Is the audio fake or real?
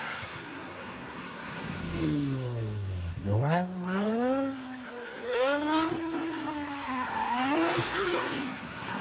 fake